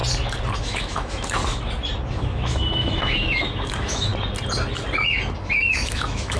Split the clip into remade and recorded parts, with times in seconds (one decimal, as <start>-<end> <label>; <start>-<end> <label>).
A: 0.0-0.6 recorded; 0.6-1.4 remade; 1.4-2.2 recorded; 2.2-4.1 remade; 4.1-5.4 recorded; 5.4-6.4 remade